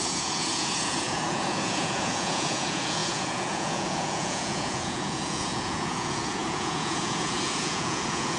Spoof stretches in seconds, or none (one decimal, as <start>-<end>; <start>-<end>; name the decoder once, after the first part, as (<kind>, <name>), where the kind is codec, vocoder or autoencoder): 0.0-8.4 (vocoder, Vocos)